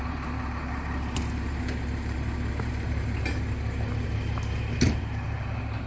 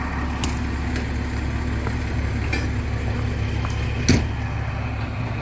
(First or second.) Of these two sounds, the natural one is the second